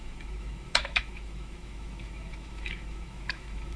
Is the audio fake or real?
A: fake